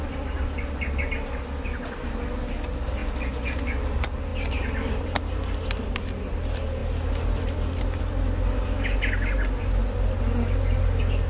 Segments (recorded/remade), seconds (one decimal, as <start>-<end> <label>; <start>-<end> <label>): 0.0-11.3 recorded